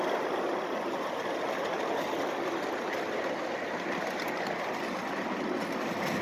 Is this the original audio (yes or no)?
yes